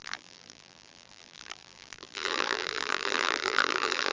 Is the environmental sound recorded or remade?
remade